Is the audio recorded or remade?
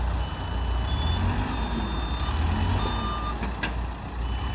recorded